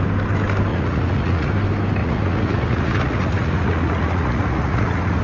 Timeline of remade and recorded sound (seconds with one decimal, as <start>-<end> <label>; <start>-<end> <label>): 0.0-0.7 recorded; 0.7-1.5 remade; 1.5-2.0 recorded; 2.0-5.2 remade